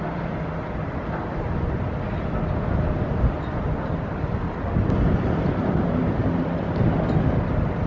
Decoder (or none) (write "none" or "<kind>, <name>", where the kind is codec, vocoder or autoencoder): none